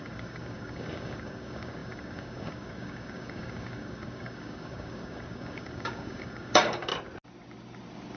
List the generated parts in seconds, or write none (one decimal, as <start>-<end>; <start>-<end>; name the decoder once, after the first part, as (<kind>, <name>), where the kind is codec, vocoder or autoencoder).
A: 0.0-6.9 (codec, DAC)